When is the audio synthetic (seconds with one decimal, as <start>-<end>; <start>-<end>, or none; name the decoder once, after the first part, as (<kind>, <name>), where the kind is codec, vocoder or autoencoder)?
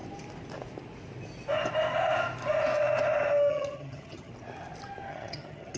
3.5-4.3 (vocoder, HiFi-GAN); 5.1-5.8